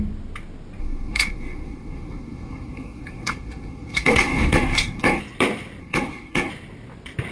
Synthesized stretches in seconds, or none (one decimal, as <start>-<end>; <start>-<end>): 0.8-5.2; 5.8-6.5